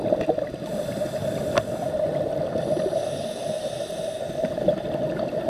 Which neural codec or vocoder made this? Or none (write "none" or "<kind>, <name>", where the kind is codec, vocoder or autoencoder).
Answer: none